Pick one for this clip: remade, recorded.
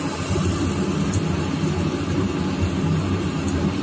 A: recorded